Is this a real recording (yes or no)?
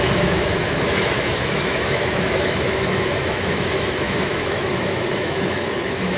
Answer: no